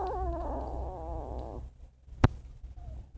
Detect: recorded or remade recorded